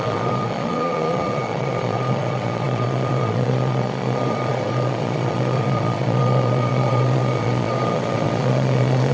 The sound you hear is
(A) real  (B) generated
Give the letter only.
B